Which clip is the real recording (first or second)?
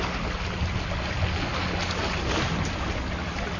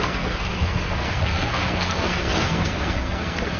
first